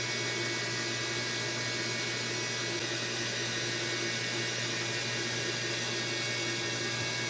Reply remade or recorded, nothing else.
recorded